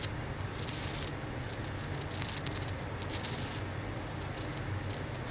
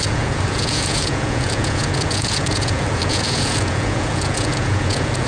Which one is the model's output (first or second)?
second